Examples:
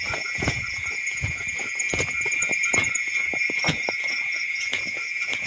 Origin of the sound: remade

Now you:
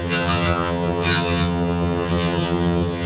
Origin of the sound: remade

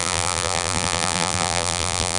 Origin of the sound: remade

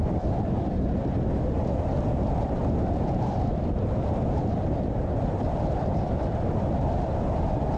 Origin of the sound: remade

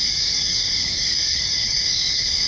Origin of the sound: remade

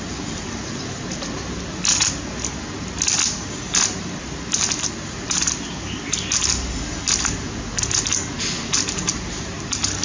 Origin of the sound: recorded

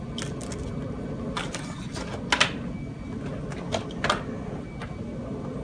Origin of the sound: recorded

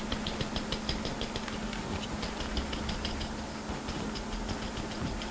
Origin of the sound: recorded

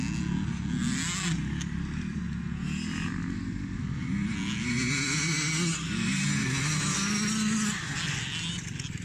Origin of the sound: recorded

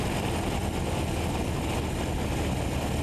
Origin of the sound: recorded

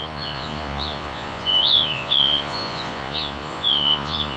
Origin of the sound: remade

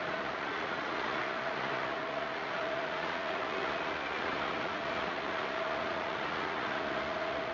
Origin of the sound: remade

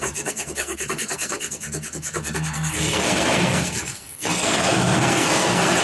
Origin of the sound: remade